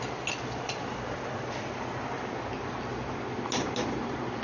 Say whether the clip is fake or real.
real